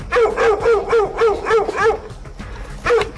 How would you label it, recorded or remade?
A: recorded